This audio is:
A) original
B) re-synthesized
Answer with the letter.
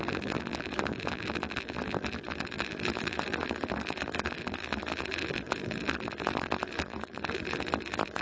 B